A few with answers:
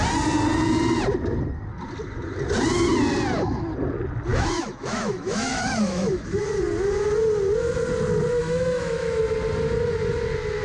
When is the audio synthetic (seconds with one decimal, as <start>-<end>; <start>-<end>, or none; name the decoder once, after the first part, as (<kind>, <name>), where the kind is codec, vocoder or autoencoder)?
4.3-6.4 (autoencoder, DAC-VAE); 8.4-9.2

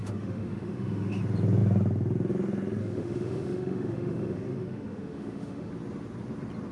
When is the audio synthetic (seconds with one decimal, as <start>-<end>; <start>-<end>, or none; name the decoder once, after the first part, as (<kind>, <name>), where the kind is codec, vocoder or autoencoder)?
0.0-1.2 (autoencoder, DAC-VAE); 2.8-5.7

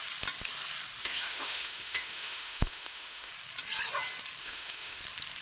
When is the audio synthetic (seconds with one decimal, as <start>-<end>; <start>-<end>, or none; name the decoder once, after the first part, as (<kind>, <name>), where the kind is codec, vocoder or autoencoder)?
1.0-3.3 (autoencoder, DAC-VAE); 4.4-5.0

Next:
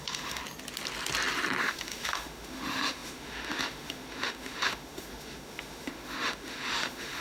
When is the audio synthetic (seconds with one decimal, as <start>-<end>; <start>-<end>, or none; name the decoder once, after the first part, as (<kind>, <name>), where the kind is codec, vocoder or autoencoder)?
0.0-0.4 (autoencoder, DAC-VAE); 1.6-7.2

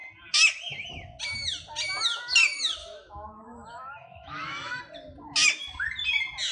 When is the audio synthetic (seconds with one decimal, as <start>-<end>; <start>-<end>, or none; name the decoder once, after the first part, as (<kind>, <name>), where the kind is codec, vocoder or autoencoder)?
2.8-4.8 (autoencoder, DAC-VAE)

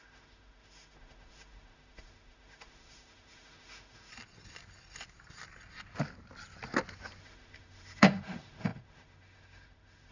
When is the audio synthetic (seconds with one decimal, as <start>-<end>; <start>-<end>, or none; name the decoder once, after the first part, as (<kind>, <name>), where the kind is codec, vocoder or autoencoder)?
0.0-4.1 (autoencoder, DAC-VAE); 7.2-10.1

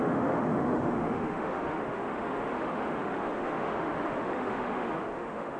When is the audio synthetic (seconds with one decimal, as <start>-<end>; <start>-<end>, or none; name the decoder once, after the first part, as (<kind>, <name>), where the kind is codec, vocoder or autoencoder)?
0.0-5.6 (autoencoder, DAC-VAE)